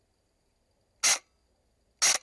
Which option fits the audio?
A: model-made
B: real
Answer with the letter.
B